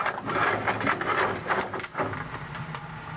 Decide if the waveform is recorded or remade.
recorded